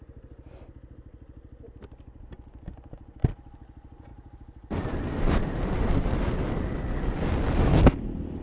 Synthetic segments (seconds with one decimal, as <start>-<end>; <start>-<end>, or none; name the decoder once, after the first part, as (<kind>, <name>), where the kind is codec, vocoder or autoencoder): 4.1-6.3 (vocoder, BigVGAN v2)